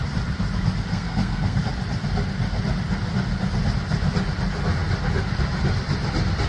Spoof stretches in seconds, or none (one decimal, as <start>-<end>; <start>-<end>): 0.9-1.6